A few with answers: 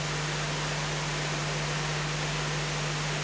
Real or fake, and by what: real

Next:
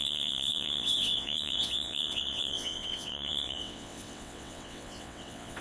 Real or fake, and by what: fake, vocoder, WaveNeXt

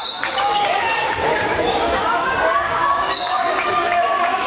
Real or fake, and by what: fake, codec, DAC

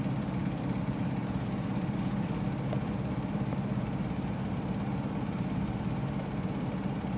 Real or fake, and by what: real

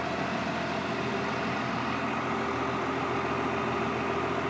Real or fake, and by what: real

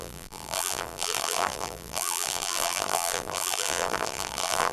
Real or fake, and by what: fake, vocoder, BigVGAN v2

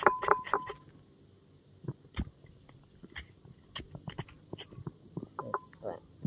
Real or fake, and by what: real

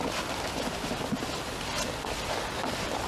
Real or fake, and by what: real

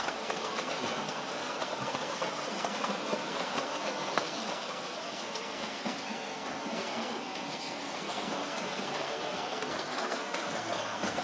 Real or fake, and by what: fake, codec, SNAC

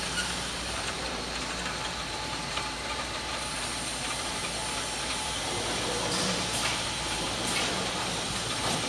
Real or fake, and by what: fake, vocoder, BigVGAN v2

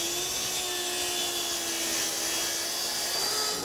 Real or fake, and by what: real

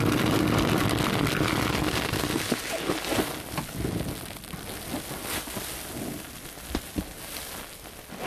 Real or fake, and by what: real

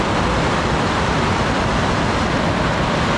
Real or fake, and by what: real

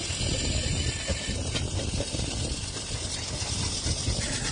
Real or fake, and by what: real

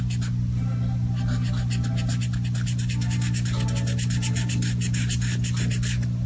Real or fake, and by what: real